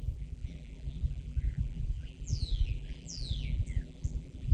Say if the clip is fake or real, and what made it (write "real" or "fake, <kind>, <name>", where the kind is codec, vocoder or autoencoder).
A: fake, vocoder, BigVGAN v2